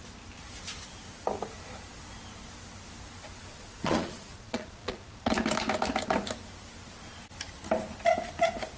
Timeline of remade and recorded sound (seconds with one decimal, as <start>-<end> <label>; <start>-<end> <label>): 0.0-3.5 recorded; 3.5-5.3 remade; 5.3-8.8 recorded